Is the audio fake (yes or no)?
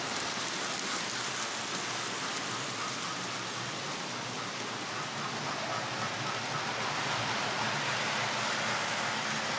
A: no